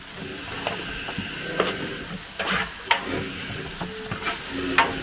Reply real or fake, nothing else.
real